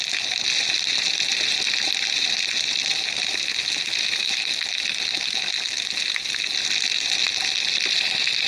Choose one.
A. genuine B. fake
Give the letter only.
A